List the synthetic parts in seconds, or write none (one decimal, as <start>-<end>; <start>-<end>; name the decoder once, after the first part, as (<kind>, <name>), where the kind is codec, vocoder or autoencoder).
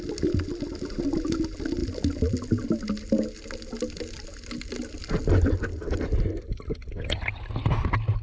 none